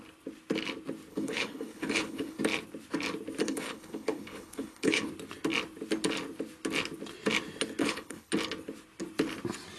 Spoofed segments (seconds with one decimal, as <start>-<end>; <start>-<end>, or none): 1.1-2.4; 3.4-5.1; 7.8-8.3

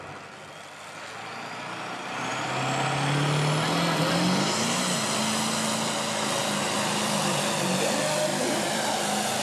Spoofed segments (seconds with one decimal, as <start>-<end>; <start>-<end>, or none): 6.6-7.4; 8.3-9.0

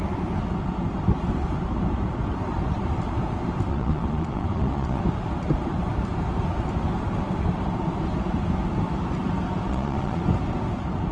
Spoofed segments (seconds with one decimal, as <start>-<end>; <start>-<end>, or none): 3.7-5.0; 9.7-10.2

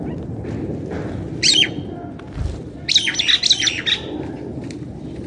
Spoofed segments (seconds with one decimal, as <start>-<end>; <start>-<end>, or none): 4.5-5.3

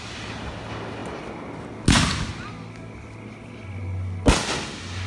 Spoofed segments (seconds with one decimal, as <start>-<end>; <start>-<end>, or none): none

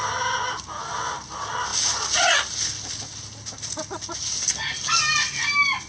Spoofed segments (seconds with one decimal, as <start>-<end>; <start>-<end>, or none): none

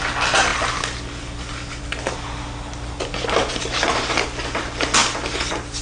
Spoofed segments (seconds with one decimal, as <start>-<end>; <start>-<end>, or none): none